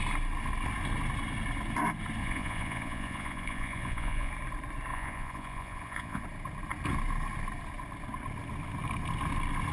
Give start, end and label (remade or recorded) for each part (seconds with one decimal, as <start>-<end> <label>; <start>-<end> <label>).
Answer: 0.0-2.2 recorded; 2.2-4.3 remade; 4.3-4.9 recorded; 4.9-6.2 remade; 6.2-9.7 recorded